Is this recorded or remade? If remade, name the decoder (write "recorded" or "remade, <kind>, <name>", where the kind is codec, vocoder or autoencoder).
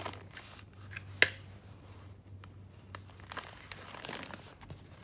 recorded